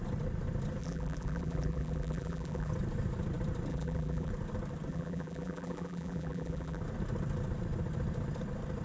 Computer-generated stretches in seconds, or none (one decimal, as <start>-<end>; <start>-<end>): 0.8-2.7; 3.7-4.3; 4.9-6.8